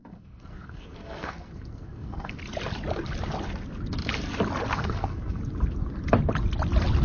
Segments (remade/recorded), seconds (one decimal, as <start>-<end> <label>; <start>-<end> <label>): 0.0-2.4 remade; 2.4-4.7 recorded; 4.7-5.4 remade; 5.4-7.0 recorded